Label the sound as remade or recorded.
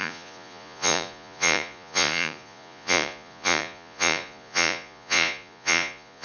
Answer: remade